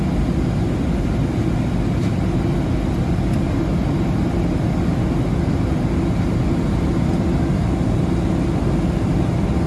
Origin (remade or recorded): recorded